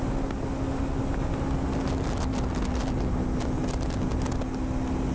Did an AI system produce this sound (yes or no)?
no